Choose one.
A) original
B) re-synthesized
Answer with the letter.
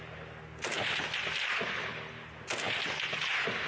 A